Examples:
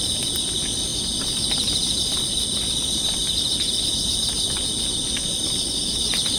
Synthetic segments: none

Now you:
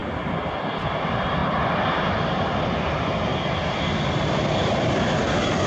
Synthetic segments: 0.7-1.4 (vocoder, BigVGAN v2); 1.9-3.3; 3.9-5.7